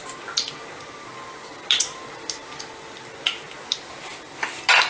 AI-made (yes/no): no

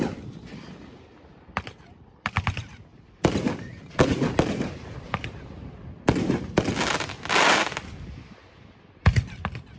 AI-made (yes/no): no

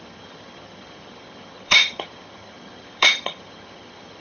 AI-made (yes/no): yes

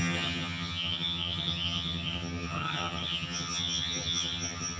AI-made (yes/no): yes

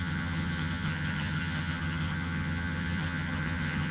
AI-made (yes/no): yes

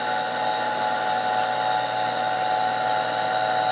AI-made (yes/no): no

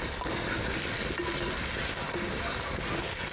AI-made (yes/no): no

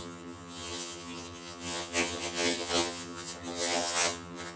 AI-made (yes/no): yes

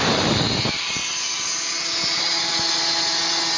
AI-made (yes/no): no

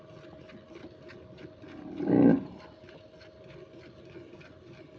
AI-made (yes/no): no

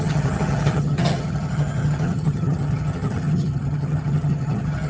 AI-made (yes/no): yes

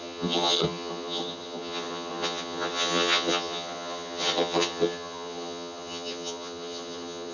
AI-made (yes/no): yes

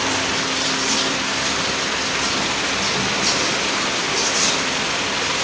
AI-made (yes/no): no